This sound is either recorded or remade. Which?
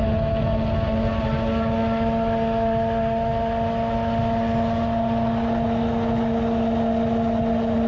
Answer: recorded